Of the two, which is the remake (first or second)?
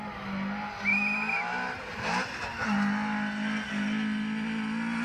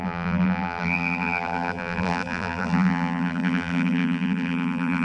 second